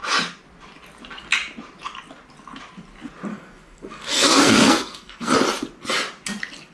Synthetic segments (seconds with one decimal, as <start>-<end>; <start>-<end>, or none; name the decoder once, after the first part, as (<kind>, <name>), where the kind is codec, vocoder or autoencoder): 3.3-5.3 (codec, SNAC)